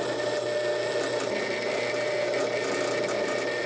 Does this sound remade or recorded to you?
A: recorded